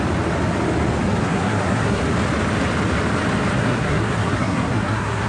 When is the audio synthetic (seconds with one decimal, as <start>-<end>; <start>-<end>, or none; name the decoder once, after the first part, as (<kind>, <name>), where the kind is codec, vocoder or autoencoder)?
1.2-2.0 (codec, SNAC); 3.6-5.3